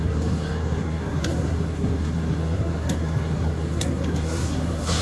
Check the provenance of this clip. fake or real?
fake